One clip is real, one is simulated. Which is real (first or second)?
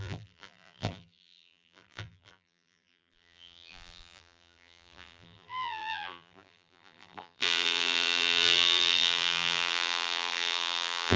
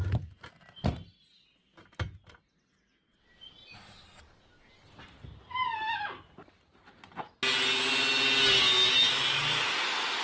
second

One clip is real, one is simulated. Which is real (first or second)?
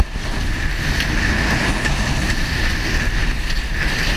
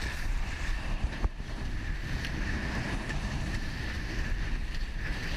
first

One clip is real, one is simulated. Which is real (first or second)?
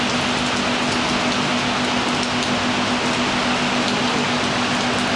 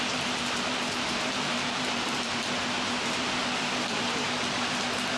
first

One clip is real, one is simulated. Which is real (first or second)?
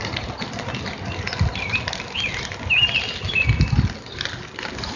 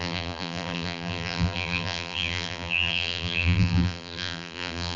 first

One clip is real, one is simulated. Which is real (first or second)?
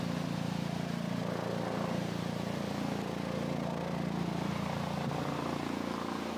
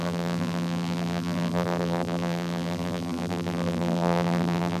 first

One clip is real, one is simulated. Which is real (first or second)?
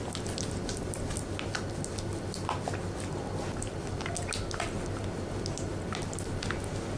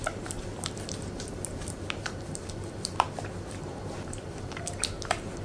first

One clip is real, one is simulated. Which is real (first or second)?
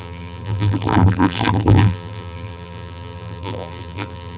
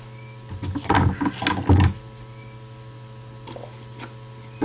second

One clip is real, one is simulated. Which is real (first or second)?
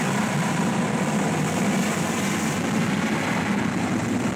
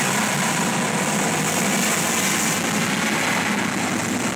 second